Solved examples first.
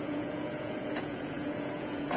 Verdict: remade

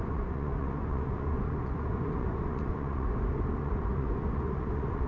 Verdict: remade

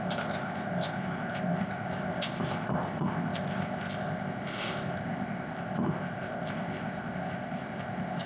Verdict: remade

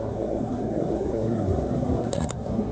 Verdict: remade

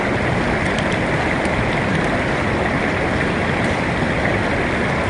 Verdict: recorded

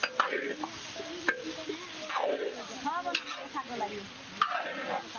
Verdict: recorded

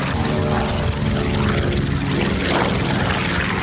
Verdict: recorded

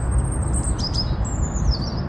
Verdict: recorded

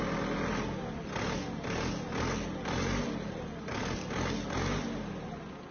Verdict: recorded